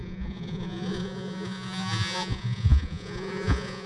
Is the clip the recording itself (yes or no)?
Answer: no